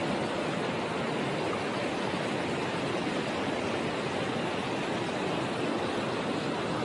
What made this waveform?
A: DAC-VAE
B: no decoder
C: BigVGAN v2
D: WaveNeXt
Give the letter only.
B